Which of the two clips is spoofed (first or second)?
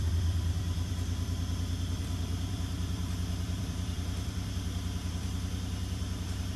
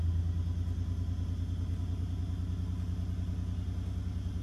first